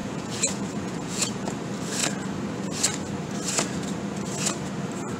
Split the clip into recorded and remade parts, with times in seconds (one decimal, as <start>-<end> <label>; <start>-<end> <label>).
0.0-1.5 remade; 1.5-5.2 recorded